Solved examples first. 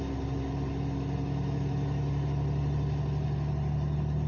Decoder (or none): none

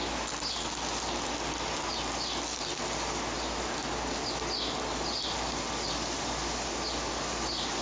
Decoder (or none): none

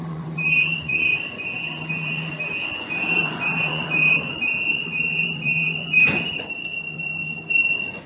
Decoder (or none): vocoder, Vocos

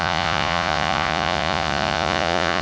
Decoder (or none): vocoder, Vocos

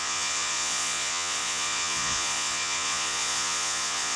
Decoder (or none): vocoder, Vocos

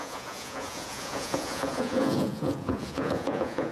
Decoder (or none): vocoder, Vocos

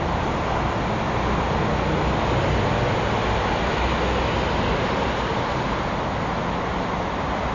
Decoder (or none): none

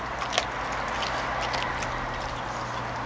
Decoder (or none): none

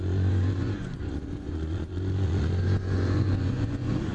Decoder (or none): vocoder, Vocos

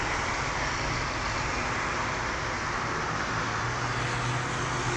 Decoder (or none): none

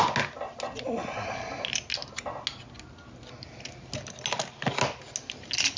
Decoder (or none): none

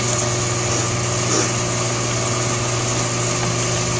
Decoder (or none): none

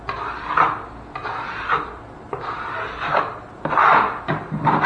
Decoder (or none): none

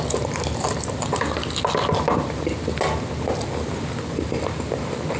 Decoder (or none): none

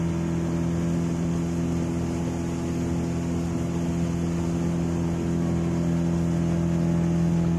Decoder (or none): none